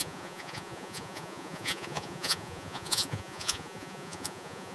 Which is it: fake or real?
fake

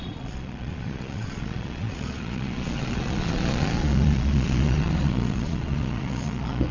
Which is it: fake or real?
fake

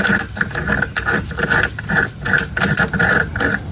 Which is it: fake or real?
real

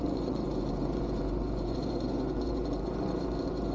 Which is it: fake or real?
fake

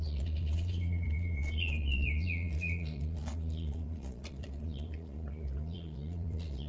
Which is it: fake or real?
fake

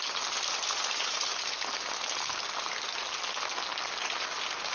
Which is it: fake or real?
real